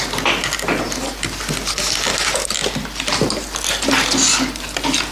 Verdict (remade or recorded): recorded